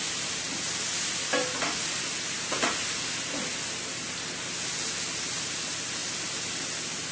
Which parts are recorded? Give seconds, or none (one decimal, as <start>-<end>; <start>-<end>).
0.0-7.1